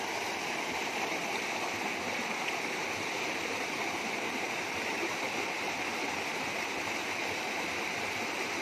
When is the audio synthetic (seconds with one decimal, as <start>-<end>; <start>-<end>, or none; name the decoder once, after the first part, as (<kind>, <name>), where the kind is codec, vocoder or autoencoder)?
none